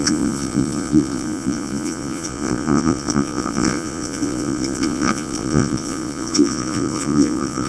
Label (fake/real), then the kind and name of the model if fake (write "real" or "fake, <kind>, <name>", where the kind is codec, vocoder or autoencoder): fake, vocoder, Vocos